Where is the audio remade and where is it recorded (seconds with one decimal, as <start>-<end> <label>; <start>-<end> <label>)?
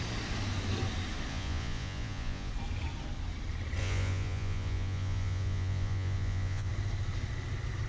0.0-1.3 recorded; 1.3-2.5 remade; 2.5-3.8 recorded; 3.8-6.7 remade; 6.7-7.9 recorded